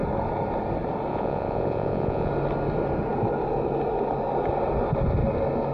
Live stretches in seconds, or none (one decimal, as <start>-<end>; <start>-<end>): 0.0-1.1; 2.3-5.7